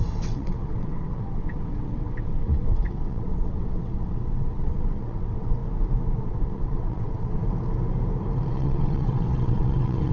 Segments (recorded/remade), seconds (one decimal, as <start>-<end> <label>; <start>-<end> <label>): 0.0-5.6 remade; 5.6-6.2 recorded; 6.2-7.4 remade; 7.4-8.5 recorded; 8.5-10.1 remade